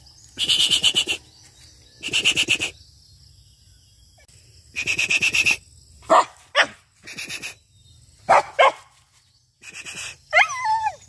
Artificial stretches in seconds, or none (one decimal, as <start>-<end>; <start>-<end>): none